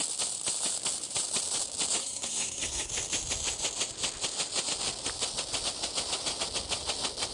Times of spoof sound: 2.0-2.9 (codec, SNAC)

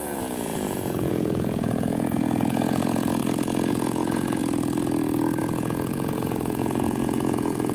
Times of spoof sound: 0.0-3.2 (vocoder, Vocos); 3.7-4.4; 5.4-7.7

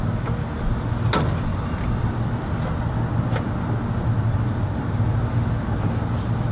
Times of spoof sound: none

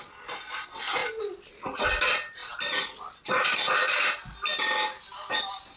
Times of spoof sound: 1.0-1.8 (vocoder, BigVGAN v2); 2.4-3.9

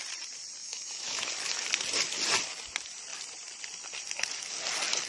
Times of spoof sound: 0.6-1.3 (autoencoder, DAC-VAE)